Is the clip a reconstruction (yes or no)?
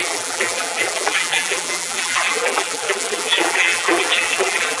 yes